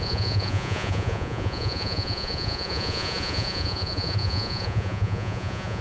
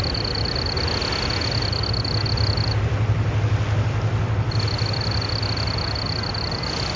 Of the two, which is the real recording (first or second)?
second